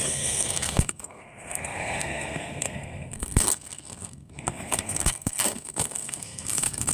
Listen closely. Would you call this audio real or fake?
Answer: fake